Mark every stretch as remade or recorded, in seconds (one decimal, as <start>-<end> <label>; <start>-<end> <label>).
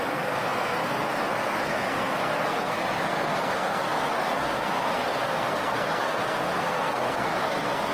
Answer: 0.0-7.9 remade